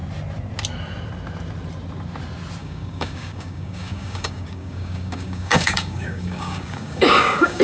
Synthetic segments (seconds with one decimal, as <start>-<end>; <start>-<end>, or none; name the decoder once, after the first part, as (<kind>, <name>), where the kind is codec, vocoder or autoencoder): 2.6-7.6 (codec, DAC)